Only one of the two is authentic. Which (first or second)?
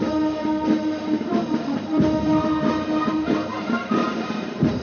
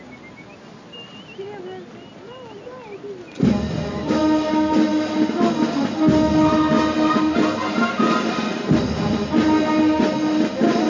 second